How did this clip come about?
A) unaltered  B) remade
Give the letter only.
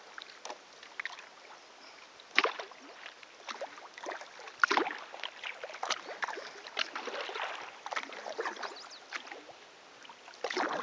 A